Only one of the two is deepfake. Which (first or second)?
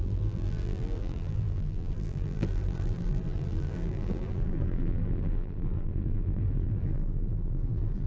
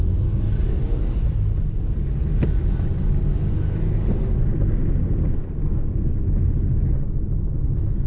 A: first